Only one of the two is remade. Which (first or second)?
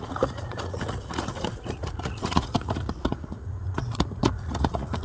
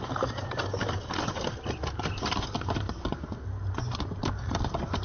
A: first